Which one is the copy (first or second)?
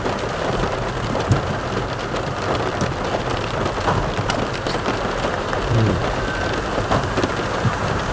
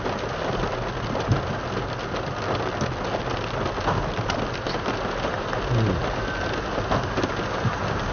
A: first